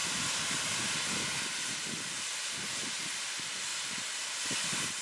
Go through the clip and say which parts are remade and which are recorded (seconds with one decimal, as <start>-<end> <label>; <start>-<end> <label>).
0.0-5.0 recorded